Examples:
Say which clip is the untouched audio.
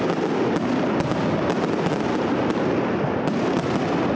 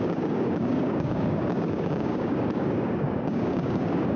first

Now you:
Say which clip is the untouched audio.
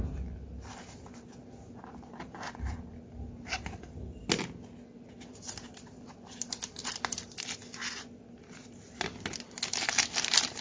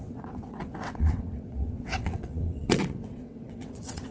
first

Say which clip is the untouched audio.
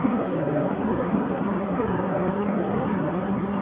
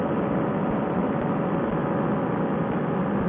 second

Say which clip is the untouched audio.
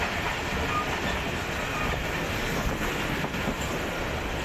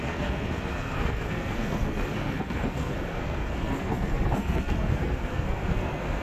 first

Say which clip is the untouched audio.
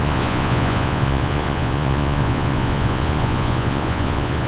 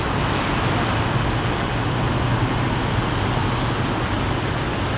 second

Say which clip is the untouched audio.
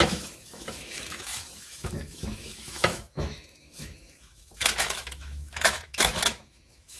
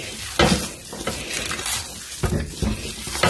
second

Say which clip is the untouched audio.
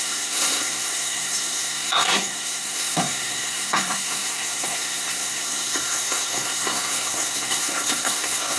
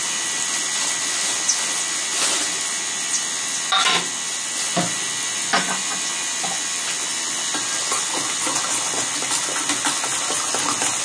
second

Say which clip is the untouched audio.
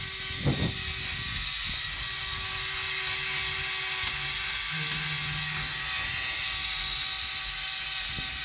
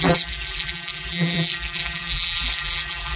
first